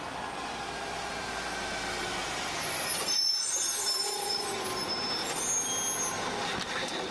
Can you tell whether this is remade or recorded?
recorded